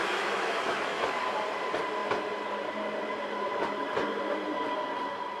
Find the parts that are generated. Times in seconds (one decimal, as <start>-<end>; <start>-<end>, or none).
0.0-1.3